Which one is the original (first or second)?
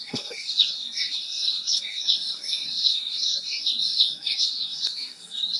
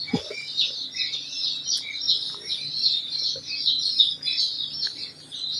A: second